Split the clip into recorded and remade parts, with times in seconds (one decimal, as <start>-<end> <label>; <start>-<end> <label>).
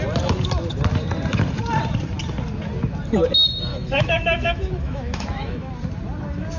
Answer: 0.0-3.7 recorded; 3.7-5.7 remade; 5.7-6.6 recorded